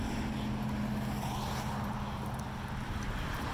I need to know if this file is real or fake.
real